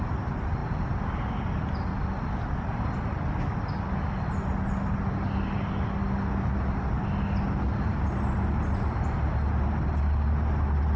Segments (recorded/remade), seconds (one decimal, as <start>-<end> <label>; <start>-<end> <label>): 0.0-11.0 recorded